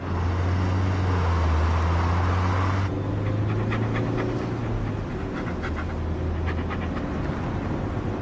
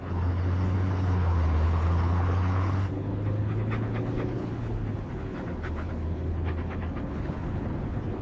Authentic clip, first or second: first